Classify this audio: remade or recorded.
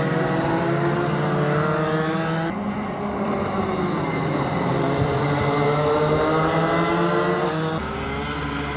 recorded